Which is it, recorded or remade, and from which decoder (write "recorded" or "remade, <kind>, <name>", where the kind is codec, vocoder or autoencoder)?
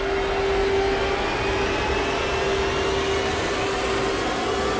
recorded